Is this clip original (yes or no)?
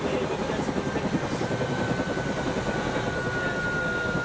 yes